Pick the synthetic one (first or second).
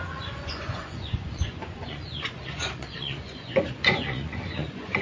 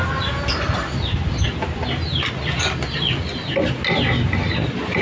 first